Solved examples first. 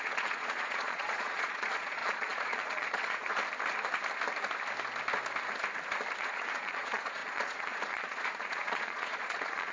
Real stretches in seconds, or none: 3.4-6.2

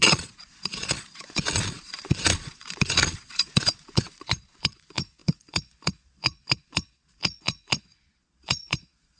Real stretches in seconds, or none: none